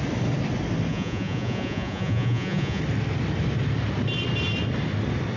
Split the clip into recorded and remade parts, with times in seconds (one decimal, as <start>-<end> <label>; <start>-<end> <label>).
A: 0.0-0.9 recorded; 0.9-2.8 remade; 2.8-5.4 recorded